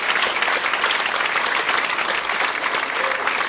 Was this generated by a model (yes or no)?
no